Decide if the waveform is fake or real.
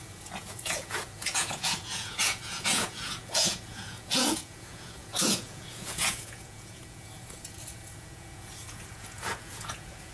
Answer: fake